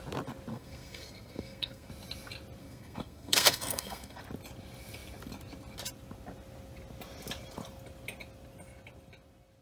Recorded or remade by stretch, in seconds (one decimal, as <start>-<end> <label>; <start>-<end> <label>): 0.0-0.5 recorded; 0.5-1.9 remade; 1.9-2.6 recorded; 2.6-4.2 remade; 4.2-9.6 recorded